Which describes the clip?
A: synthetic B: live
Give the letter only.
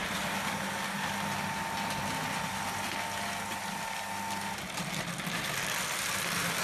B